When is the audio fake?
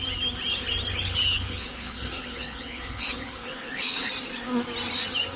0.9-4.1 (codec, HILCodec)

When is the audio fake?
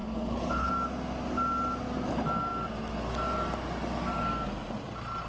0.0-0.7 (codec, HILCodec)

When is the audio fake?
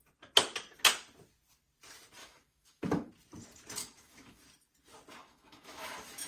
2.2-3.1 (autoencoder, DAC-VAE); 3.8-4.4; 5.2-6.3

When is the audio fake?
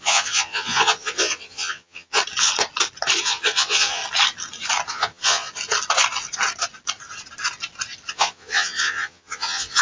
0.0-2.2 (vocoder, Vocos); 3.2-4.0; 4.9-5.5; 8.1-9.8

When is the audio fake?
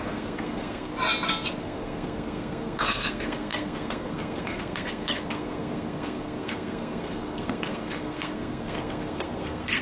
0.0-0.9 (codec, SNAC); 1.6-9.8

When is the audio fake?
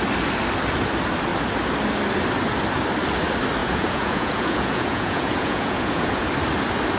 3.6-6.3 (vocoder, Vocos)